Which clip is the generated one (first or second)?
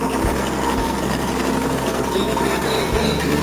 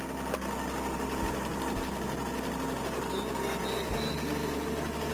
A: first